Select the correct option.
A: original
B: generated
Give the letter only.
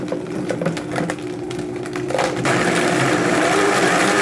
A